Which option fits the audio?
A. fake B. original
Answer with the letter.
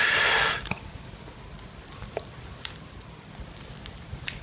A